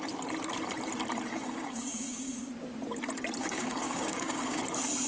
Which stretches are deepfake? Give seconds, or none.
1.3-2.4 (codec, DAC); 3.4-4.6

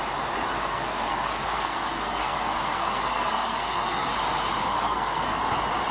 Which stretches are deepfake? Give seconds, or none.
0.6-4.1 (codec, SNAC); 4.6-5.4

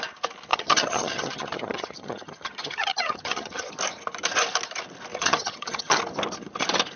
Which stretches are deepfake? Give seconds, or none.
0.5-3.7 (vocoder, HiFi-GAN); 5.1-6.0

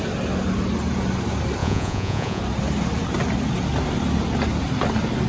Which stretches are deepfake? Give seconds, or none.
1.6-2.4 (vocoder, Vocos)